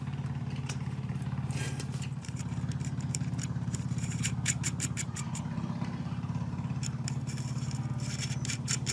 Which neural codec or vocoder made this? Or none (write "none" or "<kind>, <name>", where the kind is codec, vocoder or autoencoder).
vocoder, BigVGAN v2